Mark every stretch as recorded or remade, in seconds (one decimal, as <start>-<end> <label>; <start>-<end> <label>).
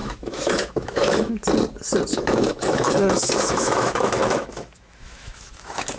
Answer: 0.0-1.3 remade; 1.3-2.1 recorded; 2.1-6.0 remade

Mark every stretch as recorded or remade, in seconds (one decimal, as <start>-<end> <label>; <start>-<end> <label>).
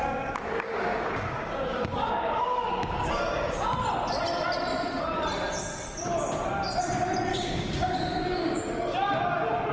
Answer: 0.0-3.7 remade; 3.7-7.3 recorded; 7.3-8.6 remade; 8.6-9.7 recorded